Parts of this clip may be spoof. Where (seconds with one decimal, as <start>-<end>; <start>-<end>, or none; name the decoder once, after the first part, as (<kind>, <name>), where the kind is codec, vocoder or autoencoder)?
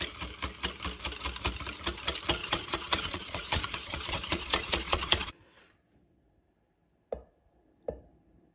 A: 2.4-6.5 (vocoder, Vocos)